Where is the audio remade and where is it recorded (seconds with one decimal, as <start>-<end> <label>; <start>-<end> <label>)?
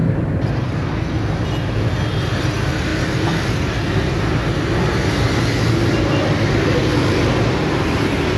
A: 0.0-8.4 recorded